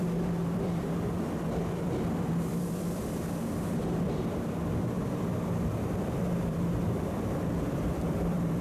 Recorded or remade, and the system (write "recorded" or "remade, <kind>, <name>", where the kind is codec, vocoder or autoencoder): remade, vocoder, BigVGAN v2